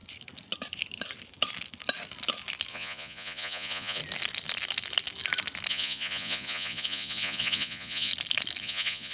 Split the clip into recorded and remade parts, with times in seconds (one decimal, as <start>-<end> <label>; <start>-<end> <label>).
0.0-2.7 recorded; 2.7-4.0 remade; 4.0-5.7 recorded; 5.7-8.1 remade; 8.1-8.6 recorded; 8.6-9.1 remade